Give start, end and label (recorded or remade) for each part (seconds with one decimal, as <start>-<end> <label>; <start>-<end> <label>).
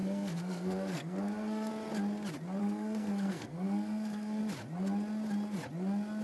0.0-1.7 remade; 1.7-2.6 recorded; 2.6-4.4 remade; 4.4-6.2 recorded